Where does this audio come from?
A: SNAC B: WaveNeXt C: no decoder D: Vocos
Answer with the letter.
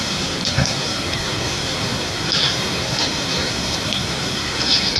A